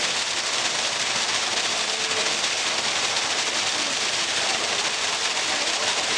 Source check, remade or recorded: recorded